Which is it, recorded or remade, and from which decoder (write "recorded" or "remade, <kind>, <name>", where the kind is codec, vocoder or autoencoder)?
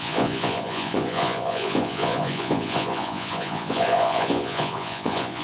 remade, vocoder, Vocos